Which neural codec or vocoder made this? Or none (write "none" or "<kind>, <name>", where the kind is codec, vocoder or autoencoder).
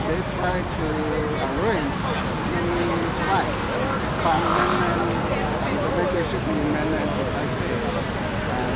none